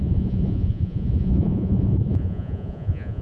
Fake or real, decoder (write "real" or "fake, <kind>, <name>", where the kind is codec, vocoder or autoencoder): fake, vocoder, Vocos